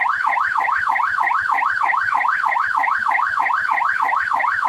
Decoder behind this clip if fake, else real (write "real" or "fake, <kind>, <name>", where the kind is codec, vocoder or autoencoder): fake, autoencoder, DAC-VAE